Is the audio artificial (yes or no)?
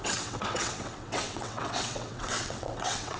yes